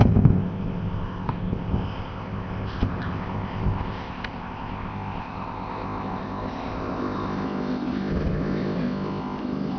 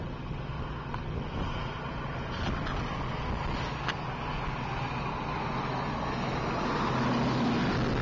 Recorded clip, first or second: second